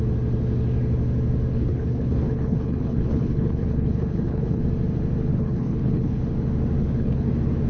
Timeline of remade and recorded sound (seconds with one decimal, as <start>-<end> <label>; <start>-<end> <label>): 0.0-1.5 recorded; 1.5-4.6 remade; 4.6-5.3 recorded; 5.3-6.2 remade; 6.2-6.8 recorded; 6.8-7.3 remade; 7.3-7.7 recorded